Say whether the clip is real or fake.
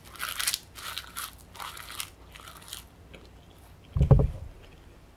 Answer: real